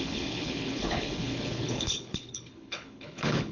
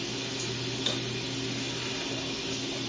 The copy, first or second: first